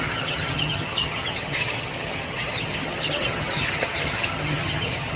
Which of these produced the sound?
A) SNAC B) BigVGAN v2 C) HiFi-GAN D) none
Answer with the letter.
C